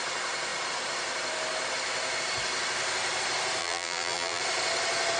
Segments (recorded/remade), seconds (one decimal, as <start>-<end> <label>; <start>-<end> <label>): 0.0-3.6 recorded; 3.6-4.4 remade; 4.4-5.2 recorded